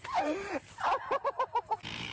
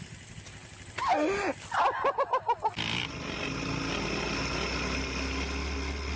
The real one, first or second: second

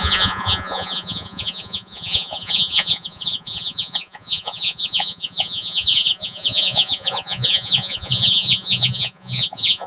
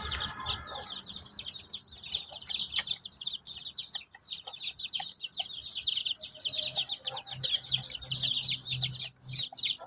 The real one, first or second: second